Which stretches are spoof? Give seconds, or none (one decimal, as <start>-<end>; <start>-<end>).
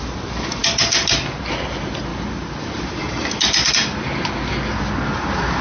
none